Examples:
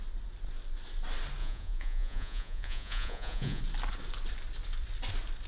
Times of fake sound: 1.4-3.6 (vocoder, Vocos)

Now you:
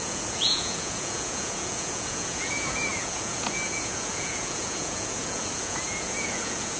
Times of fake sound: 0.0-6.8 (vocoder, Vocos)

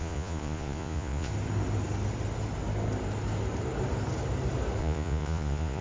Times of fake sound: 0.0-1.3 (vocoder, Vocos); 4.8-5.8

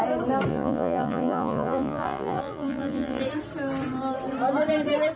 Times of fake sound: 0.5-3.2 (vocoder, Vocos)